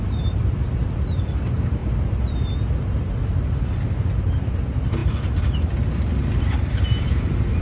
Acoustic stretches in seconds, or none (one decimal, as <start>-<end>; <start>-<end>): 0.0-7.6